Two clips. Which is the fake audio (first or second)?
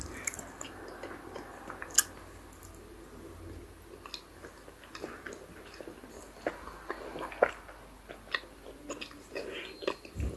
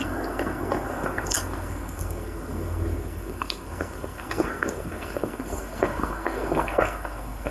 second